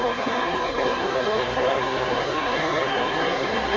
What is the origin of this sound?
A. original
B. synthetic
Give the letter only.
B